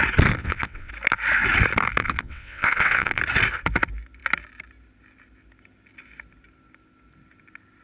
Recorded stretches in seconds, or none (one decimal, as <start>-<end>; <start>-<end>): 0.0-0.4; 0.9-2.0; 3.2-7.8